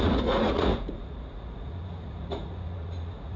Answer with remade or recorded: remade